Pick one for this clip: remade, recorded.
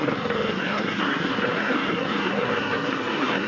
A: remade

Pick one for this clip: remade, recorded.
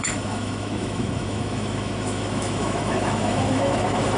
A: remade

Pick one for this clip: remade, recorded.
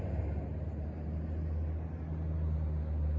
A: recorded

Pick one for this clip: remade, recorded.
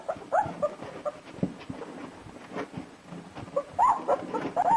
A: recorded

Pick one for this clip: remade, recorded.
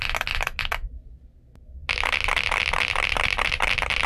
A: recorded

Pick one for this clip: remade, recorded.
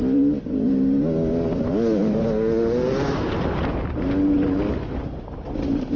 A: recorded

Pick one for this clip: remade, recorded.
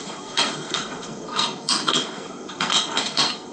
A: remade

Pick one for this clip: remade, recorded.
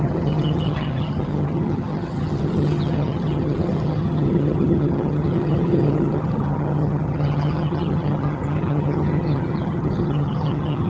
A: remade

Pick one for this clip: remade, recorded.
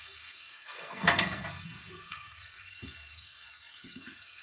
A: remade